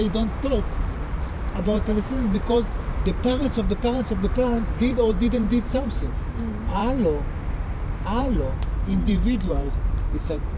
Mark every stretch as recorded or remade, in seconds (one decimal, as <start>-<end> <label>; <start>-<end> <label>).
0.0-6.8 remade; 6.8-8.2 recorded; 8.2-10.6 remade